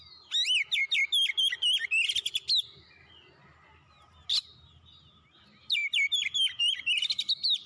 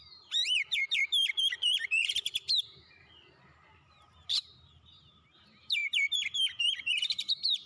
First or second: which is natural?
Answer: first